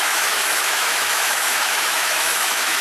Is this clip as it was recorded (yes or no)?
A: no